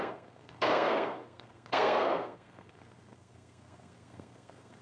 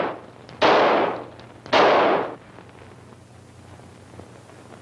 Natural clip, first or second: second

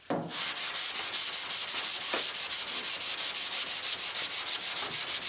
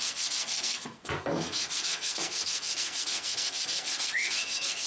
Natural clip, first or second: first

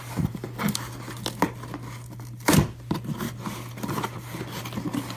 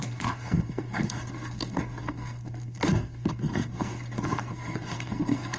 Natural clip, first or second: first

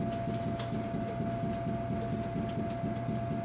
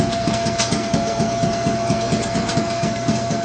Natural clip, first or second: first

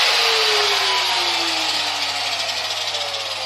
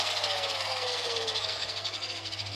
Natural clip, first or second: first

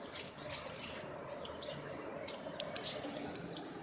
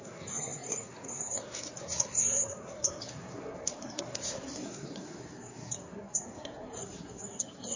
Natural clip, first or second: first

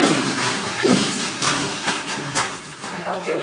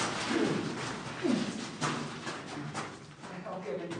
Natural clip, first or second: second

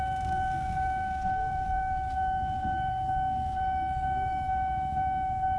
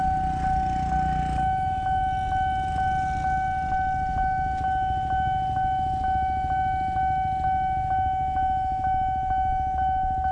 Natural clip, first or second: second